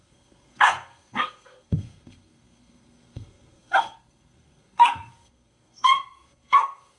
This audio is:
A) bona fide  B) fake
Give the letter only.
B